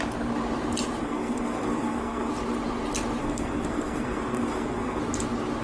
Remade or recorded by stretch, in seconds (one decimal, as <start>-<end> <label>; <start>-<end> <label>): 0.0-1.0 recorded; 1.0-2.3 remade; 2.3-3.2 recorded; 3.2-5.0 remade; 5.0-5.6 recorded

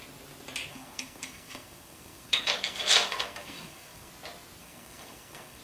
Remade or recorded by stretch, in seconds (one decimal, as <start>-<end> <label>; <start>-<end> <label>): 0.0-0.7 recorded; 0.7-4.1 remade; 4.1-4.6 recorded; 4.6-5.6 remade

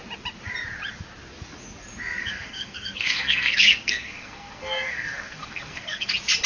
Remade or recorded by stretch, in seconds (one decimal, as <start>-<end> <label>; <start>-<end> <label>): 0.0-2.2 recorded; 2.2-6.1 remade; 6.1-6.5 recorded

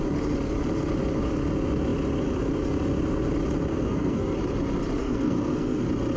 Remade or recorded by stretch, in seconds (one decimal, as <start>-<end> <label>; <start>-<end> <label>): 0.0-3.7 recorded; 3.7-4.2 remade; 4.2-5.0 recorded; 5.0-5.8 remade; 5.8-6.2 recorded

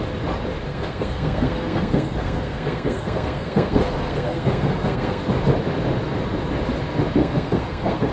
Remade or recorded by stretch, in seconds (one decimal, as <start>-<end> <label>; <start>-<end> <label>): 0.0-0.7 recorded; 0.7-5.2 remade; 5.2-7.2 recorded; 7.2-8.1 remade

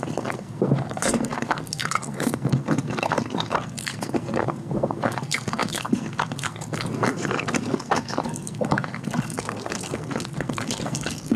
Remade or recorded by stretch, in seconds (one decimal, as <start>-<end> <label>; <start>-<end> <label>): 0.0-11.4 remade

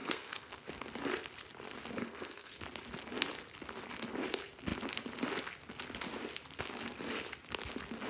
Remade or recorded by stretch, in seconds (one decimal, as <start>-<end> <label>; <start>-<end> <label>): 0.0-0.7 remade; 0.7-2.0 recorded; 2.0-2.6 remade; 2.6-8.1 recorded

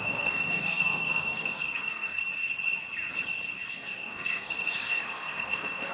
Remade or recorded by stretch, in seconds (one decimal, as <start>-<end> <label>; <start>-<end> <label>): 0.0-2.2 remade; 2.2-3.7 recorded; 3.7-5.9 remade